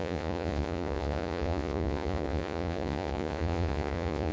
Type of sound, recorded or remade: remade